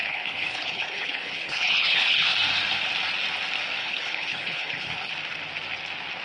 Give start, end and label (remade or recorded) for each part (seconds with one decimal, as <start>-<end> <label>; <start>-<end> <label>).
0.0-2.3 remade; 2.3-3.8 recorded; 3.8-5.1 remade; 5.1-6.2 recorded